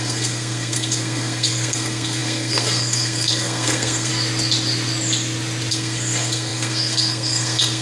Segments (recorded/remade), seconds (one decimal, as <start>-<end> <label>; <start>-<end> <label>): 0.0-4.1 remade; 4.1-5.7 recorded; 5.7-7.8 remade